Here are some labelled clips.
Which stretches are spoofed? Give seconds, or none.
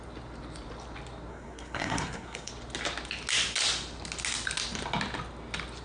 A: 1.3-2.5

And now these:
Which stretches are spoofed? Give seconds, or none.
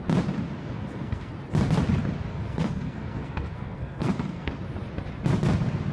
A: 0.6-1.3; 2.3-4.5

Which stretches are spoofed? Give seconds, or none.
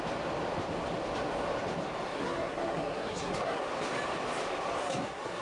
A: 2.1-3.6; 4.8-5.4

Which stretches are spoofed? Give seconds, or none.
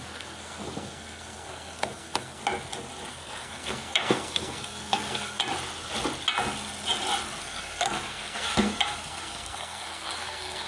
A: 0.0-2.4; 3.1-5.4; 7.4-10.7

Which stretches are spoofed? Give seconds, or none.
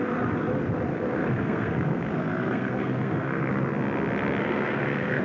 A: 0.9-3.5; 4.4-5.2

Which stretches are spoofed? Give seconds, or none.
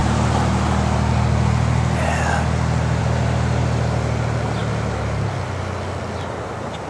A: none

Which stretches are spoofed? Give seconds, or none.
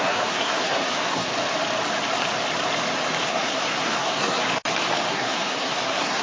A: 0.0-1.3; 3.2-4.4; 5.1-6.2